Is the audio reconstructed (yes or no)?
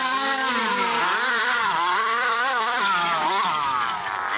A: yes